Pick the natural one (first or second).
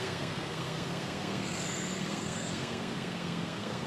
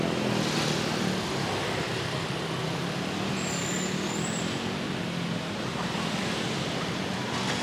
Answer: second